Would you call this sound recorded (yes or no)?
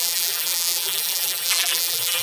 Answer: no